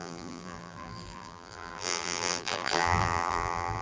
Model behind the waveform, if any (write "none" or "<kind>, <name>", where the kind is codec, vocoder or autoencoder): vocoder, BigVGAN v2